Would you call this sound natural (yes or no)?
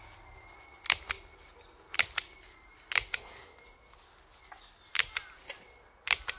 yes